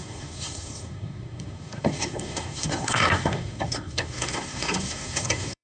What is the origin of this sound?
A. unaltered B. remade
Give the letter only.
B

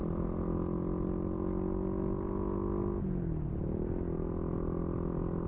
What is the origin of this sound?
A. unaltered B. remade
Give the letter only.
A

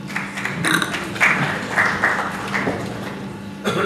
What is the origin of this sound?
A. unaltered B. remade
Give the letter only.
A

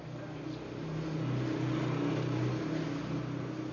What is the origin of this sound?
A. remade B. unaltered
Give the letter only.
B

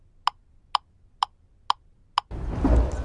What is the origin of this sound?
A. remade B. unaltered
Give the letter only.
B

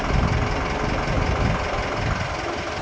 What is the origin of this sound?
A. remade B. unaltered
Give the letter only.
B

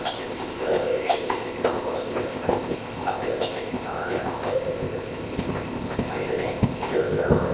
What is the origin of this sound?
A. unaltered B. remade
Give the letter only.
B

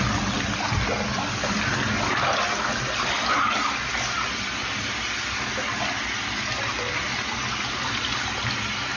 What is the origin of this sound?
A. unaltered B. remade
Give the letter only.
A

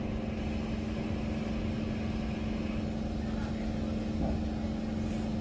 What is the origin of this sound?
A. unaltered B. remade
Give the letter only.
A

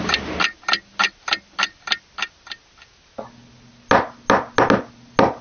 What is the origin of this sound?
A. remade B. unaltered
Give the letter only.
B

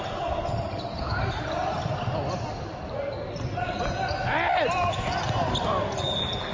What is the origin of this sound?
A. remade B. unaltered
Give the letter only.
B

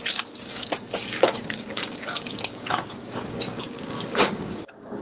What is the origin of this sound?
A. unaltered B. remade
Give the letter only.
B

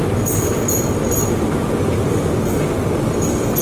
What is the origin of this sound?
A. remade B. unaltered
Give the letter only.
B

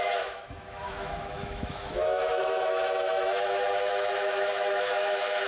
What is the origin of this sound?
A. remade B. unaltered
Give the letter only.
A